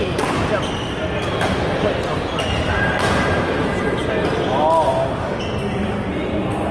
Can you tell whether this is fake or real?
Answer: real